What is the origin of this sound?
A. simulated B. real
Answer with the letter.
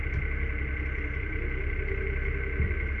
B